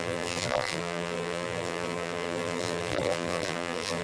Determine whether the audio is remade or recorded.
remade